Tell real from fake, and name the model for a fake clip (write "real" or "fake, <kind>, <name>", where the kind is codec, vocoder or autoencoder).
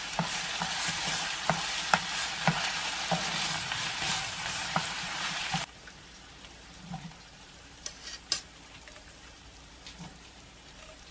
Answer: fake, vocoder, BigVGAN v2